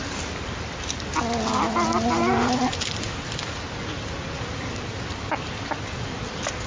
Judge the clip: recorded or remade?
recorded